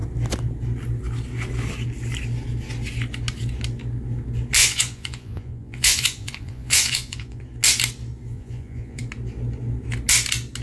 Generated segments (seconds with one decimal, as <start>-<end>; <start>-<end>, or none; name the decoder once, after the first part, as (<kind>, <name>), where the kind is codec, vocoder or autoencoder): 4.6-7.4 (vocoder, Vocos); 8.3-9.0